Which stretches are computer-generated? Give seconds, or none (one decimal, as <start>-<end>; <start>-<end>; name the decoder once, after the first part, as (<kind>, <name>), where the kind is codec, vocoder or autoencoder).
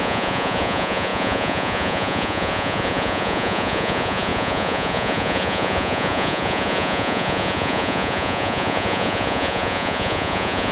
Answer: 0.0-10.7 (vocoder, Vocos)